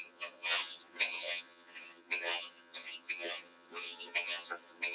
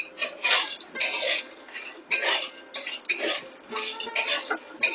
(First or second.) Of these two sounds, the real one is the second